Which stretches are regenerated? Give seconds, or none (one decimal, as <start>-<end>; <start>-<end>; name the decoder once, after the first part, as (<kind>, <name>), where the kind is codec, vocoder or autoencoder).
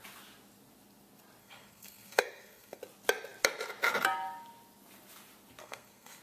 1.4-2.8 (codec, SNAC); 5.6-6.2